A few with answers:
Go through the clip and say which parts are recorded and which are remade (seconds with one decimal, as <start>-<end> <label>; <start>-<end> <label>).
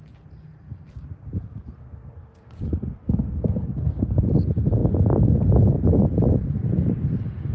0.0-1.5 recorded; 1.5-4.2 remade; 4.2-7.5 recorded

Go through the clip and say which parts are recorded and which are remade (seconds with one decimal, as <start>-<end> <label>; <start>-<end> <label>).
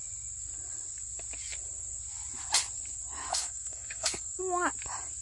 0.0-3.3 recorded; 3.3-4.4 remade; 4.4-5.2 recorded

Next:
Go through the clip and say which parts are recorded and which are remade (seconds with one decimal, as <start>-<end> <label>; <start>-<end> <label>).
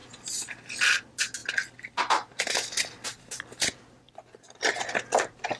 0.0-5.6 recorded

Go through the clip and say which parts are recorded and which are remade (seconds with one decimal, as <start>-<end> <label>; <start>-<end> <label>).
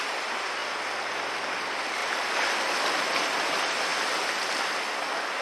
0.0-5.4 recorded